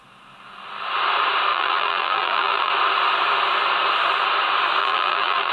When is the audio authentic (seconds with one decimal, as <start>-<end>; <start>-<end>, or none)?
0.0-1.5; 2.7-4.8